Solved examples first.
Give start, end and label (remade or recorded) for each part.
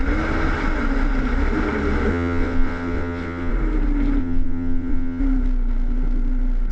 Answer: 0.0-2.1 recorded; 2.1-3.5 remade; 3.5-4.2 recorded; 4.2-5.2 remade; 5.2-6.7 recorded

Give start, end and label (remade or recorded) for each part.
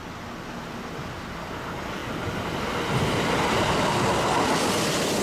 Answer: 0.0-5.2 recorded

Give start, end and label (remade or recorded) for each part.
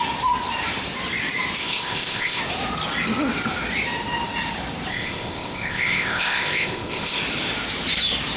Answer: 0.0-1.6 recorded; 1.6-2.4 remade; 2.4-4.9 recorded; 4.9-7.2 remade; 7.2-8.4 recorded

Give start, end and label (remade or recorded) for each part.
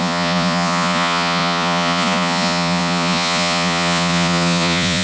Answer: 0.0-5.0 remade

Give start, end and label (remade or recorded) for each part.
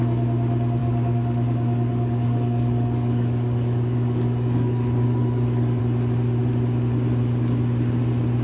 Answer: 0.0-0.8 recorded; 0.8-5.8 remade; 5.8-8.4 recorded